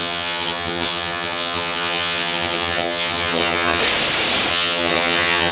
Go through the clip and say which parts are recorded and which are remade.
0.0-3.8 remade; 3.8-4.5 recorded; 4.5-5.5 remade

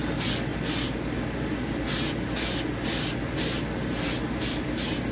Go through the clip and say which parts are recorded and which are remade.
0.0-5.1 recorded

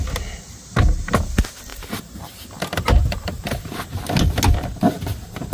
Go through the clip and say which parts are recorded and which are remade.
0.0-1.7 recorded; 1.7-3.7 remade; 3.7-5.5 recorded

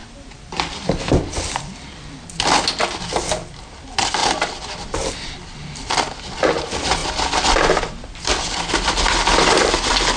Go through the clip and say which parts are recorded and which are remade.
0.0-2.2 remade; 2.2-4.2 recorded; 4.2-5.1 remade; 5.1-7.0 recorded; 7.0-7.8 remade; 7.8-10.2 recorded